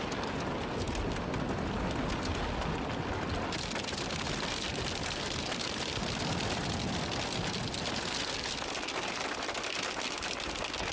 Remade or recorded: recorded